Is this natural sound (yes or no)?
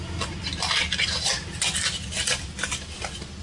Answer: yes